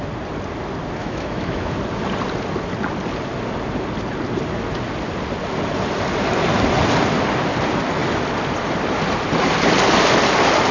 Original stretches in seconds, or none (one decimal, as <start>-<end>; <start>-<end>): 0.0-1.0; 1.8-10.7